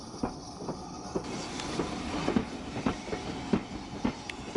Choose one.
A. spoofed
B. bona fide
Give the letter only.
B